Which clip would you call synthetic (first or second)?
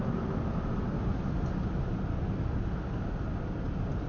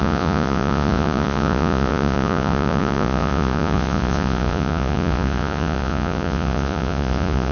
second